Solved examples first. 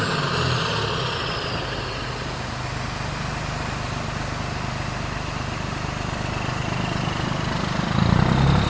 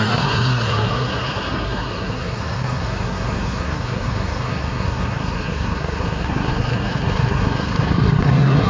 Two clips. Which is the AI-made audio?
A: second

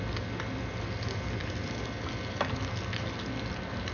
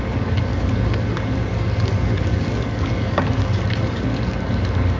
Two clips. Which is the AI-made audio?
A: second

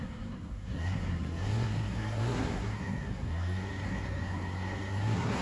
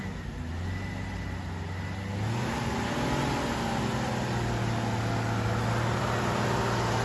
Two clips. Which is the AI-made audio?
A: first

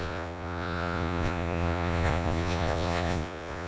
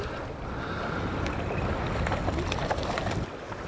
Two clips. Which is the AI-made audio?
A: first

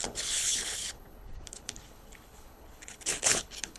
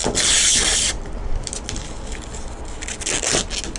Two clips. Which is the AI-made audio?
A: first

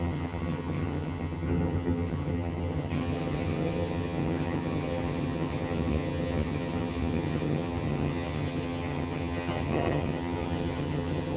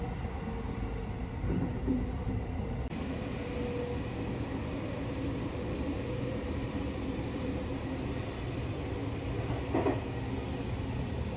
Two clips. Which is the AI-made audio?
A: first